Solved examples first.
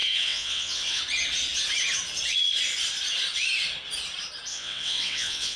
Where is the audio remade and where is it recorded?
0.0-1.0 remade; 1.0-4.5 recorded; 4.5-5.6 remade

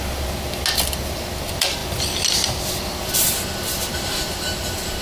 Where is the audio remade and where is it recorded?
0.0-5.0 recorded